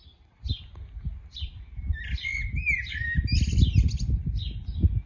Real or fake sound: real